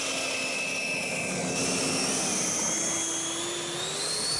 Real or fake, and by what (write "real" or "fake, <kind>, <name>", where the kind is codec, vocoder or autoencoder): real